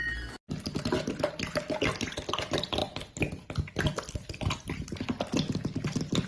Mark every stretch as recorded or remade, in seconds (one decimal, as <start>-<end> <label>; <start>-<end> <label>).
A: 0.0-6.3 recorded